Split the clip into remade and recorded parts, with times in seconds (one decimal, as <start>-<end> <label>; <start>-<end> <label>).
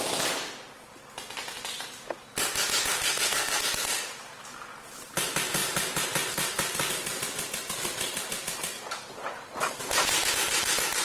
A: 0.0-2.9 recorded; 2.9-3.6 remade; 3.6-11.0 recorded